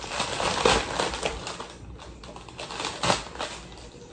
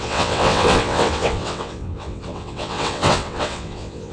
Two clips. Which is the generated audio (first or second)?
second